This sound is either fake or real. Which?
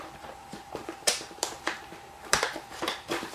fake